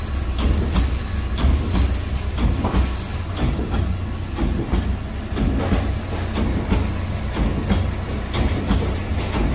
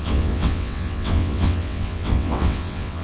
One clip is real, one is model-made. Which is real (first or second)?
first